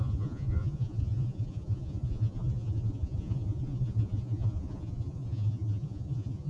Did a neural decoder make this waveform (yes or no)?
yes